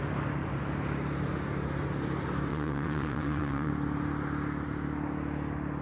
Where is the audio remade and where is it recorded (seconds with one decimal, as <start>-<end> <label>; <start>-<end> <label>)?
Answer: 0.0-2.5 recorded; 2.5-3.7 remade; 3.7-5.8 recorded